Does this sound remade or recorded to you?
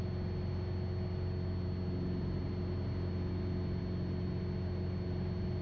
recorded